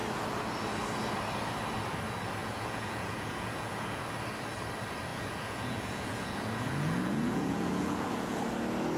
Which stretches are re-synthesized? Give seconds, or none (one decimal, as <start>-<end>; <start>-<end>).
2.4-4.0; 5.1-8.4